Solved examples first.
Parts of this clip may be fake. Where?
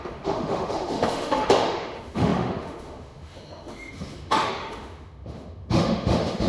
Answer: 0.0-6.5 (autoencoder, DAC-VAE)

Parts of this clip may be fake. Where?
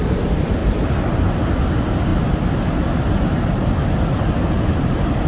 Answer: none